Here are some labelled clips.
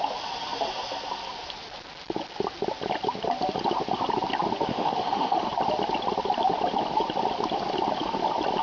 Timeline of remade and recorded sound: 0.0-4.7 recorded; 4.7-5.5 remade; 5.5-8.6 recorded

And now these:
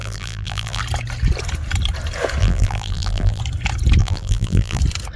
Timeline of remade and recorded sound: 0.0-0.8 remade; 0.8-2.4 recorded; 2.4-3.4 remade; 3.4-4.0 recorded; 4.0-4.8 remade; 4.8-5.2 recorded

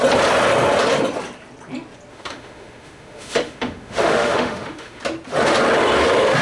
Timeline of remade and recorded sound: 0.0-2.1 recorded; 2.1-5.0 remade; 5.0-6.4 recorded

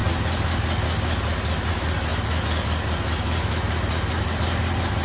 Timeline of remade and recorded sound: 0.0-5.0 recorded

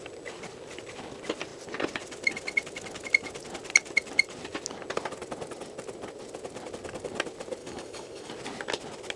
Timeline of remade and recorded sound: 0.0-7.6 recorded; 7.6-8.3 remade; 8.3-9.2 recorded